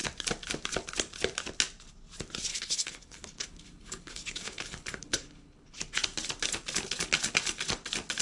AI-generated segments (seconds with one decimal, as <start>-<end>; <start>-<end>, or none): 2.5-5.8